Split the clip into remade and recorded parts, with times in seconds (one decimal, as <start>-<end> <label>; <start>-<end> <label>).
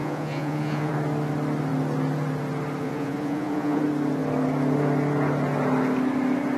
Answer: 0.0-0.9 remade; 0.9-2.8 recorded; 2.8-3.8 remade; 3.8-6.6 recorded